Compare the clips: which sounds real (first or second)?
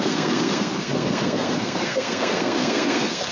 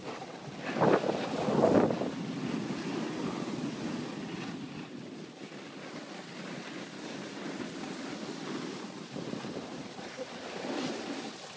second